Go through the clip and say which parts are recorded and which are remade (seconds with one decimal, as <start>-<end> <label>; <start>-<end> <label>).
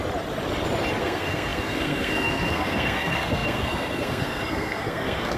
0.0-1.0 recorded; 1.0-5.4 remade